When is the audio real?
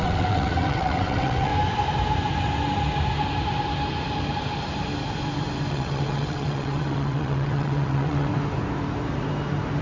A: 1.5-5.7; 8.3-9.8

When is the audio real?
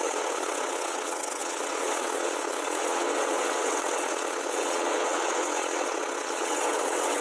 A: none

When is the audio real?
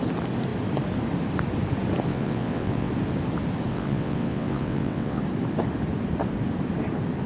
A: 0.0-2.1; 2.9-3.7; 5.2-7.3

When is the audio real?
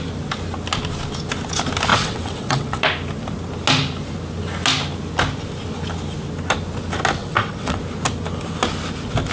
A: 0.0-1.9; 2.8-7.2; 7.8-9.3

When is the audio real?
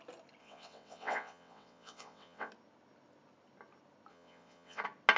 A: 0.0-0.4; 2.5-4.1; 4.8-5.2